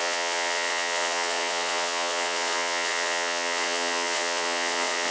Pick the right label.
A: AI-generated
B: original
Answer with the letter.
A